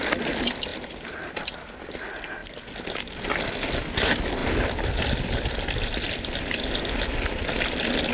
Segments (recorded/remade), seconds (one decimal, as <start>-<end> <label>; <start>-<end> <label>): 0.0-0.7 recorded; 0.7-1.9 remade; 1.9-8.1 recorded